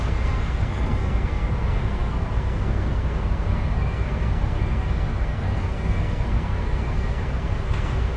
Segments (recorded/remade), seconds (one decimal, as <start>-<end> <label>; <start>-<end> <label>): 0.0-8.2 remade